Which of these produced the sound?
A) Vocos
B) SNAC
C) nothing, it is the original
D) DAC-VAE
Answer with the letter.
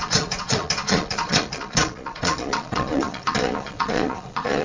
A